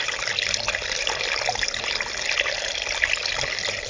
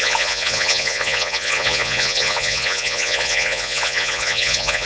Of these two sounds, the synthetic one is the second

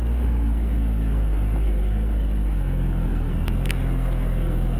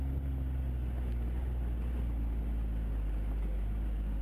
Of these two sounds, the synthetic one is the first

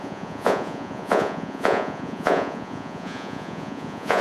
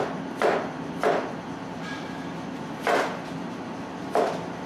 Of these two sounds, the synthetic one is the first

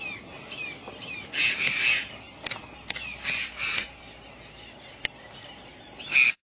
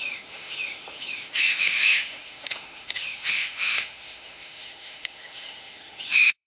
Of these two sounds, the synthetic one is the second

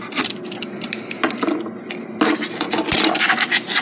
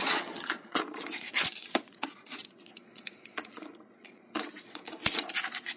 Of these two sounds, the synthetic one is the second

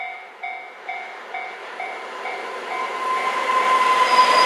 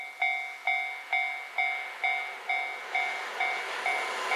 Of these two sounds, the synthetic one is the first